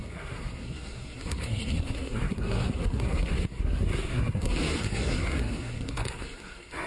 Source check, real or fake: fake